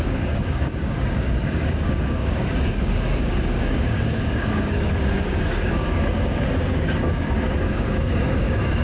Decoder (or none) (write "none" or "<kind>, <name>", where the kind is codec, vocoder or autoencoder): codec, DAC